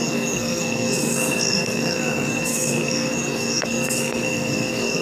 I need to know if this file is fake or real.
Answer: fake